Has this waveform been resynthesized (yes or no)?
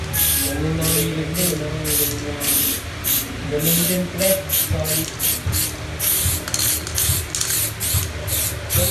no